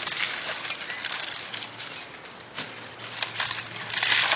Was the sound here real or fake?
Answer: real